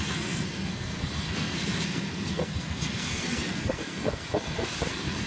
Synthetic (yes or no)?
yes